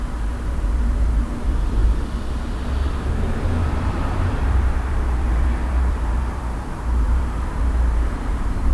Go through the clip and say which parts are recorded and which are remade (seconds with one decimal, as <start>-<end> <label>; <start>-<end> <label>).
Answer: 0.0-1.8 remade; 1.8-3.0 recorded; 3.0-8.7 remade